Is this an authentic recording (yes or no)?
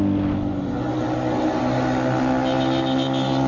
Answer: yes